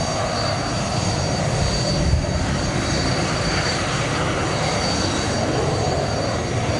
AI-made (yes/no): no